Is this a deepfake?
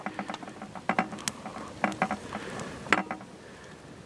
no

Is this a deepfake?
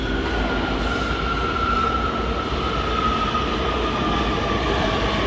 no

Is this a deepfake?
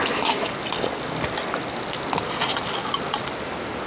no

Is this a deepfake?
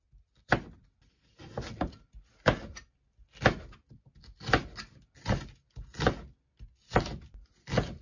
no